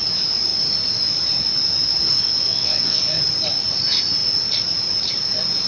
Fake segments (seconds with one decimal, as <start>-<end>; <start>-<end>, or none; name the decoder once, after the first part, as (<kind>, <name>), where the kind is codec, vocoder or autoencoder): 2.5-3.0 (vocoder, WaveNeXt)